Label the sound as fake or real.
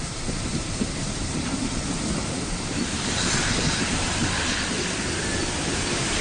fake